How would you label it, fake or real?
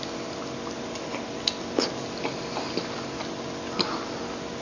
real